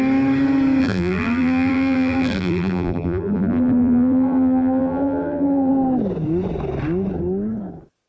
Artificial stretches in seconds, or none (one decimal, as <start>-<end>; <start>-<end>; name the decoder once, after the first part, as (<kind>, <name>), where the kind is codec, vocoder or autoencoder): 0.8-5.7 (vocoder, BigVGAN v2)